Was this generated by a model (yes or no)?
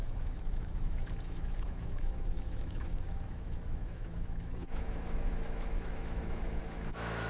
yes